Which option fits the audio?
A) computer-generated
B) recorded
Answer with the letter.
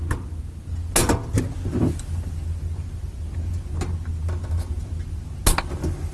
B